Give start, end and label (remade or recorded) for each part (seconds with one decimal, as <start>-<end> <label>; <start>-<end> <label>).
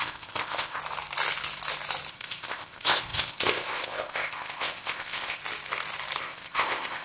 0.0-0.8 remade; 0.8-2.1 recorded; 2.1-5.4 remade; 5.4-6.2 recorded; 6.2-7.0 remade